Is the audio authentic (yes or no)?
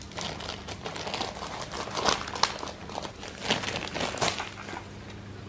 yes